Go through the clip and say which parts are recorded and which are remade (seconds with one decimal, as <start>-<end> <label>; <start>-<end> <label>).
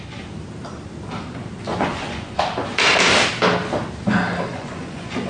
0.0-1.7 recorded; 1.7-2.4 remade; 2.4-4.5 recorded; 4.5-5.3 remade